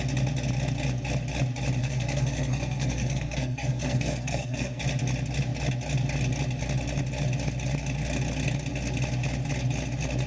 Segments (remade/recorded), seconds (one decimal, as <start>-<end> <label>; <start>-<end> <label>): 0.0-1.8 recorded; 1.8-4.8 remade; 4.8-10.3 recorded